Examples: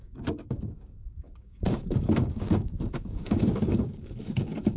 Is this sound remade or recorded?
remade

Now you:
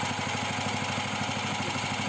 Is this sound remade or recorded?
recorded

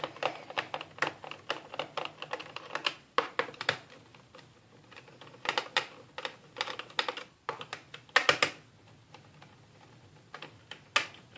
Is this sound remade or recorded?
recorded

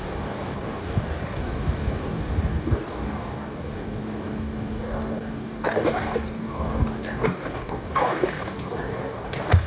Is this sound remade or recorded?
remade